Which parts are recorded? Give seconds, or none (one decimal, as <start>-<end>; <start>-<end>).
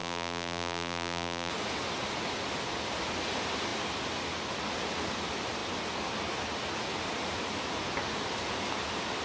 1.5-9.2